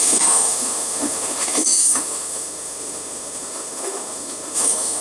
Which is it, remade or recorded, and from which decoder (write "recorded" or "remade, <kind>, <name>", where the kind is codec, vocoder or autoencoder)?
remade, autoencoder, DAC-VAE